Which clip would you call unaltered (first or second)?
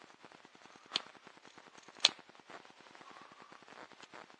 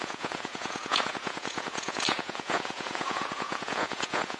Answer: first